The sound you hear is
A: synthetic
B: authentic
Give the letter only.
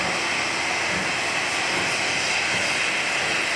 B